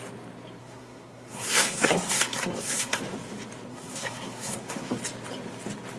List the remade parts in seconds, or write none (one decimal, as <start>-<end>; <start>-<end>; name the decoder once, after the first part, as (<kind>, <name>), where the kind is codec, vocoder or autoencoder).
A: 0.6-3.0 (codec, SNAC); 3.7-5.0